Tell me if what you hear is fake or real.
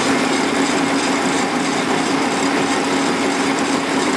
fake